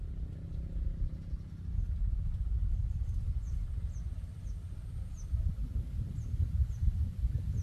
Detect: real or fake real